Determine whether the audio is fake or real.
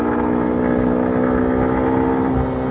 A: real